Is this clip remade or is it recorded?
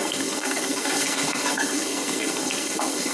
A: remade